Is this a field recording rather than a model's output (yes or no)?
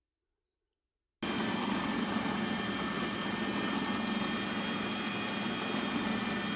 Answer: yes